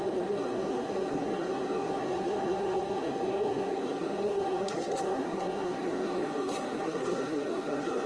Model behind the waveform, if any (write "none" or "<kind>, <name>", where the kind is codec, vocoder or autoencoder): codec, SNAC